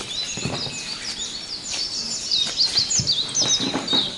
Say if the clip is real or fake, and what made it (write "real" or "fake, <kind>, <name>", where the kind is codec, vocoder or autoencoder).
real